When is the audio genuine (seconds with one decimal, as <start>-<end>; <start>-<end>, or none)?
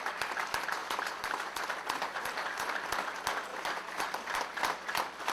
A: 0.0-0.8; 1.6-2.1; 2.7-3.5; 4.4-5.3